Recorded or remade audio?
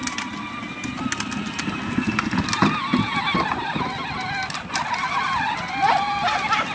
recorded